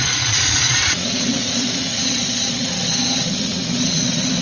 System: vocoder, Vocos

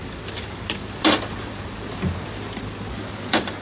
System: vocoder, BigVGAN v2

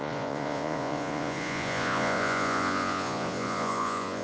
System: vocoder, Vocos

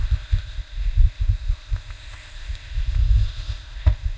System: codec, ZipCodec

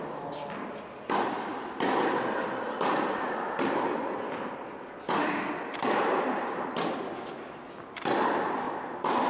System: none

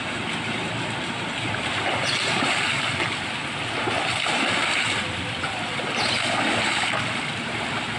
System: none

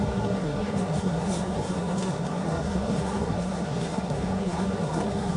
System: codec, SNAC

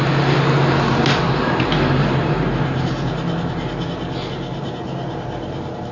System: none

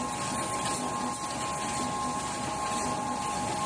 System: none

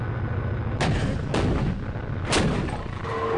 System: none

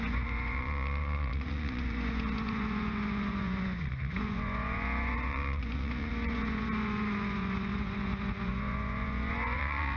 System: vocoder, Vocos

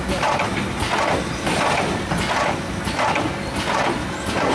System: none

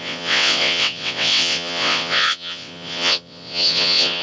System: vocoder, WaveNeXt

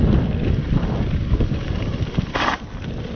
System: none